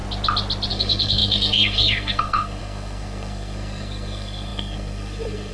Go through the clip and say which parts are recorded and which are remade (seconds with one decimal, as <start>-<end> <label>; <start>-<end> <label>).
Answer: 0.0-0.7 recorded; 0.7-5.5 remade